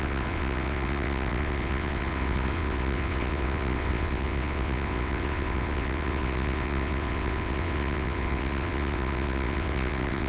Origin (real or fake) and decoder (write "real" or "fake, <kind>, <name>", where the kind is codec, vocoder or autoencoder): fake, vocoder, WaveNeXt